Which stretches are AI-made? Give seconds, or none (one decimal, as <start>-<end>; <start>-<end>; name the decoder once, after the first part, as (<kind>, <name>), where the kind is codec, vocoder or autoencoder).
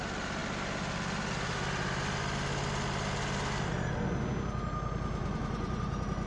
5.2-6.3 (vocoder, Vocos)